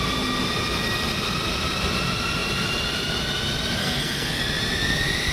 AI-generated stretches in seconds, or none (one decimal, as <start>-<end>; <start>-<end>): 3.8-4.4